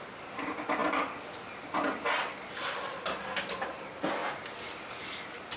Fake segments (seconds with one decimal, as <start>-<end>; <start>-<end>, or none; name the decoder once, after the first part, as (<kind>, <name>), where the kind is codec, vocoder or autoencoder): none